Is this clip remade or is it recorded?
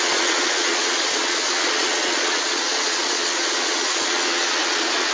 remade